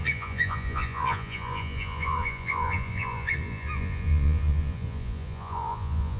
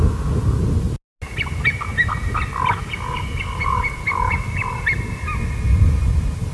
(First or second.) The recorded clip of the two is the second